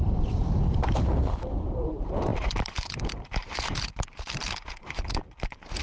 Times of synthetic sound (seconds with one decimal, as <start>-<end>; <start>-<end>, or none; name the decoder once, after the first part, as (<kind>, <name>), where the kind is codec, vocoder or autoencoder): 0.0-5.8 (vocoder, BigVGAN v2)